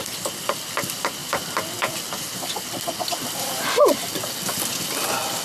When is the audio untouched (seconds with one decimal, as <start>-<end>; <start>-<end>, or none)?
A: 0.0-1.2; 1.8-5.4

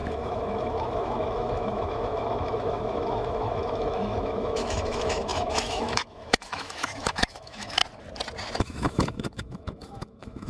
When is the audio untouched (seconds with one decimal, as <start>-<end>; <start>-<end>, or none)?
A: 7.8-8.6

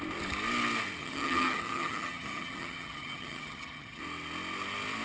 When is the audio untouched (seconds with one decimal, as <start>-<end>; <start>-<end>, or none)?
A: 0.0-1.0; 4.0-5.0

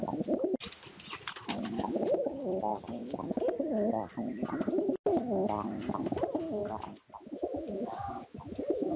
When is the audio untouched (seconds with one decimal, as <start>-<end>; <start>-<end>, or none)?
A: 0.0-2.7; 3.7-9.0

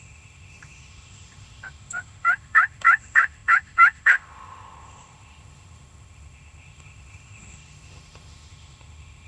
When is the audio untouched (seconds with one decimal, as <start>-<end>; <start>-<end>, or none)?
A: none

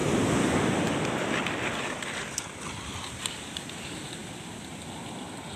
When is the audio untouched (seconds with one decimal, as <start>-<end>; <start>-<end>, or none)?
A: 0.0-5.6

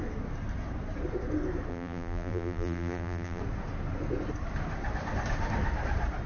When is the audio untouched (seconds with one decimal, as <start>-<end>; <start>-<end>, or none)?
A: 0.0-1.7; 3.4-6.3